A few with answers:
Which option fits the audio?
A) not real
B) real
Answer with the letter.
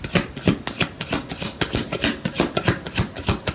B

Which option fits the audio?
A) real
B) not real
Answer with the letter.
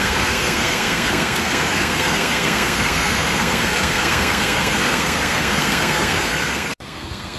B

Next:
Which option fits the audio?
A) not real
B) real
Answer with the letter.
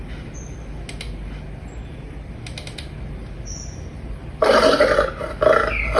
B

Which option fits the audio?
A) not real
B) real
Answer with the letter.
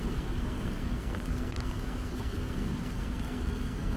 A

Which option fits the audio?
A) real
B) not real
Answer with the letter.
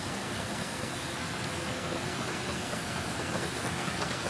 B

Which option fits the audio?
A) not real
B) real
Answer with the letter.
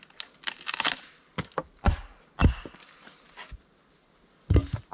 B